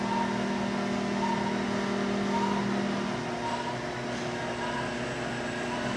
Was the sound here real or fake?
real